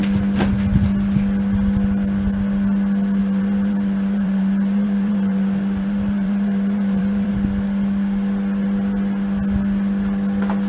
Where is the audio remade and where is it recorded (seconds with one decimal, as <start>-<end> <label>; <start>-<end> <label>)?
0.0-3.2 recorded; 3.2-7.3 remade; 7.3-10.7 recorded